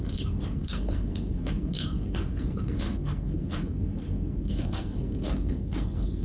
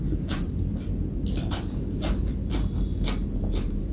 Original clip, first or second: second